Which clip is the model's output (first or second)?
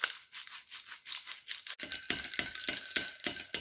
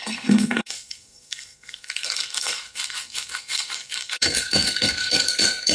second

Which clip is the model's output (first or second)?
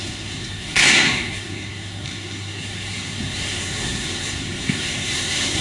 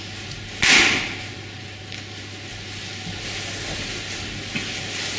first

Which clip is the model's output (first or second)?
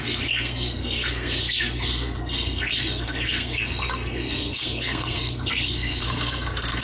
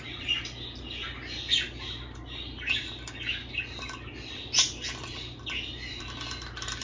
first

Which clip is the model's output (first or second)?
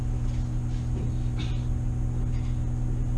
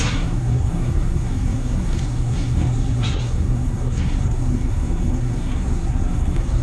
second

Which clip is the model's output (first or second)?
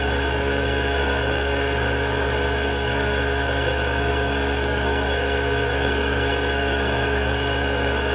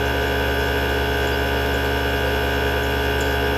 first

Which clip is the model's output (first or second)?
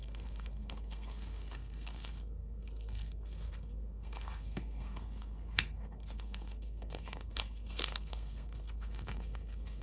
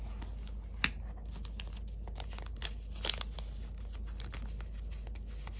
first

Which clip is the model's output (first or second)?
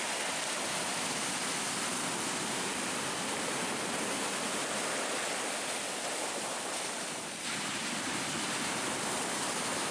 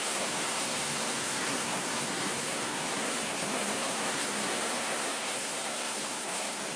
second